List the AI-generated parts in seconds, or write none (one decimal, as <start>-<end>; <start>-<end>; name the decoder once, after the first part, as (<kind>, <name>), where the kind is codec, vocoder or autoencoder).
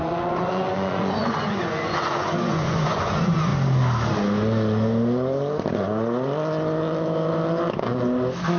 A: 0.0-3.5 (vocoder, Vocos)